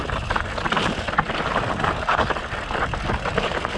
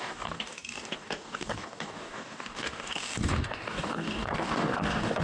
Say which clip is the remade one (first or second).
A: second